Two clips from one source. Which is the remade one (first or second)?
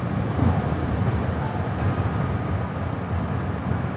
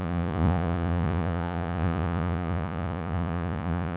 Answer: second